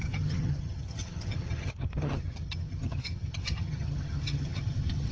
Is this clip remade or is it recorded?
remade